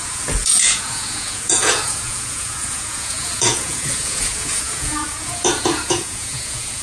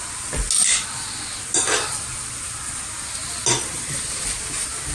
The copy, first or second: first